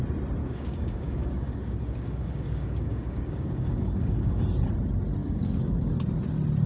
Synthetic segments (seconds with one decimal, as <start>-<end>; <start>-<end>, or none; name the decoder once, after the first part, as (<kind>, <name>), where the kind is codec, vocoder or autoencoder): 0.4-4.4 (codec, DAC); 5.2-5.9